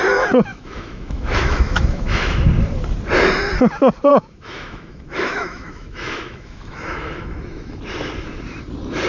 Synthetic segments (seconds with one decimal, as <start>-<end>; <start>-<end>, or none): 0.5-2.5; 4.1-7.8